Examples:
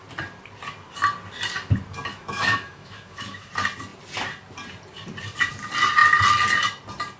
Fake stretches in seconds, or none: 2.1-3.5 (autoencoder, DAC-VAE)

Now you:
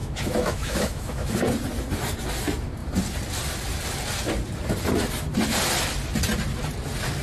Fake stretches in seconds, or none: 0.0-1.3 (autoencoder, DAC-VAE)

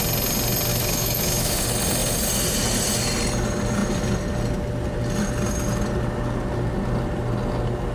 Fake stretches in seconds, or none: 0.7-1.6 (autoencoder, DAC-VAE)